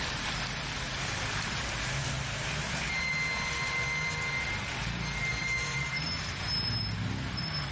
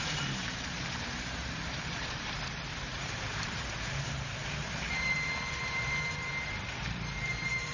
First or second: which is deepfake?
second